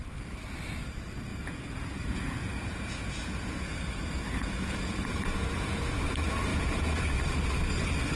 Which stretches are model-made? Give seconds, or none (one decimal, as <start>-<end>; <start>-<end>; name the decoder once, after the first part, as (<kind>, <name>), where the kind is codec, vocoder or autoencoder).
1.3-6.1 (vocoder, Vocos); 6.5-7.1